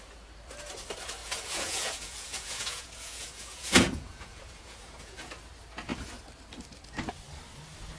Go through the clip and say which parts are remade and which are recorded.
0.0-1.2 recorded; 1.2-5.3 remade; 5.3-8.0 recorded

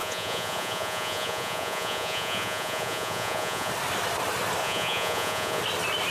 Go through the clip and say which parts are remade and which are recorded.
0.0-3.7 remade; 3.7-4.6 recorded; 4.6-5.6 remade; 5.6-6.1 recorded

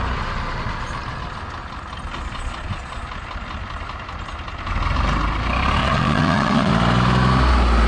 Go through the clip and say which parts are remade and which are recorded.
0.0-2.3 recorded; 2.3-3.0 remade; 3.0-5.8 recorded; 5.8-6.7 remade; 6.7-7.9 recorded

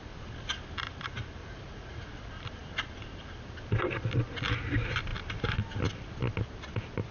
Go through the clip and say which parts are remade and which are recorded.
0.0-1.4 recorded; 1.4-2.1 remade; 2.1-7.1 recorded

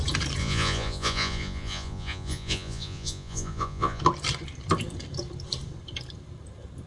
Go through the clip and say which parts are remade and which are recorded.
0.0-0.4 recorded; 0.4-4.0 remade; 4.0-6.9 recorded

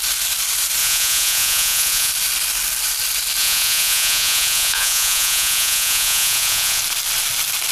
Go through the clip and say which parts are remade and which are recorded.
0.0-0.8 recorded; 0.8-2.1 remade; 2.1-3.4 recorded; 3.4-6.8 remade; 6.8-7.7 recorded

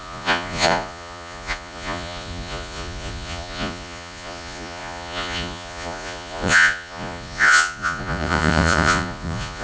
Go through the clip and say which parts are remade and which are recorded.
0.0-9.6 remade